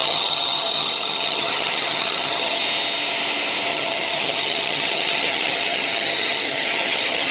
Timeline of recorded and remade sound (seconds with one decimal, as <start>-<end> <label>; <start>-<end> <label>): 0.0-2.6 remade; 2.6-3.7 recorded; 3.7-7.3 remade

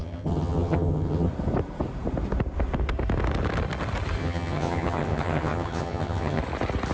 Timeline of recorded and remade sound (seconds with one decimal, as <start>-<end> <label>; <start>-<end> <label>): 0.0-1.3 remade; 1.3-4.2 recorded; 4.2-6.4 remade; 6.4-6.9 recorded

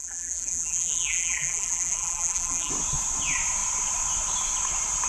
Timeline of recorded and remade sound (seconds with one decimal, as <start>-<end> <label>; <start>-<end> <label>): 0.0-2.7 remade; 2.7-5.1 recorded

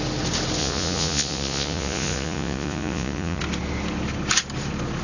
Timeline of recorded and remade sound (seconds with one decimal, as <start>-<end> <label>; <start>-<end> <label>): 0.0-0.6 recorded; 0.6-3.4 remade; 3.4-5.0 recorded

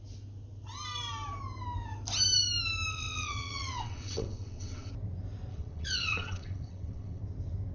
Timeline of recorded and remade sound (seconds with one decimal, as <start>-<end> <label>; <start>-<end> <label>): 0.0-2.9 recorded; 2.9-4.9 remade; 4.9-5.5 recorded; 5.5-7.2 remade; 7.2-7.7 recorded